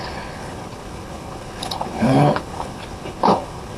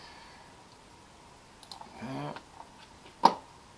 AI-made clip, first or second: first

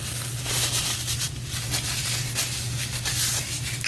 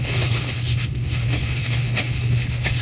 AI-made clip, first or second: second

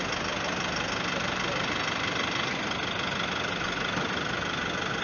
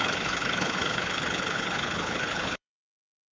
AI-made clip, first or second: second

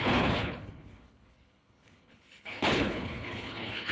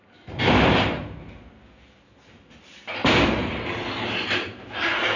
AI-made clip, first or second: first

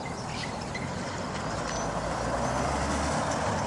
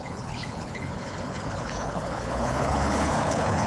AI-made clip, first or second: second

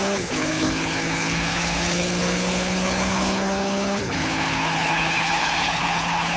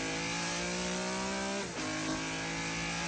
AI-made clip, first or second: first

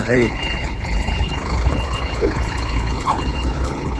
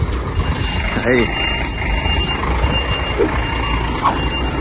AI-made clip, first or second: first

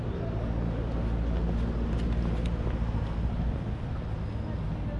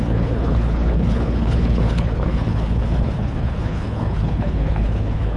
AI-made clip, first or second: second